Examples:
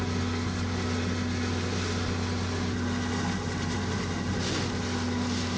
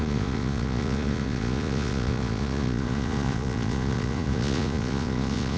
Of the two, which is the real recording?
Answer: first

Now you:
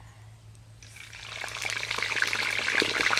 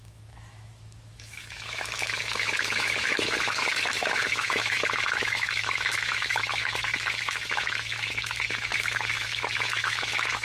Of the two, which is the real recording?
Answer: first